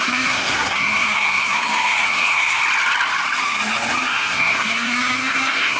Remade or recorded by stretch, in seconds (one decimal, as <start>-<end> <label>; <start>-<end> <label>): 0.0-2.6 remade; 2.6-4.1 recorded; 4.1-5.8 remade